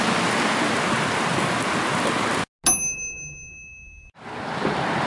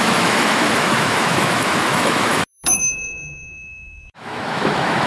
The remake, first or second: second